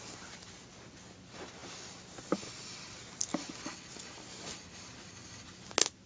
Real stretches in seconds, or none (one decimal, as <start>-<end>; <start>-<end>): 0.0-6.1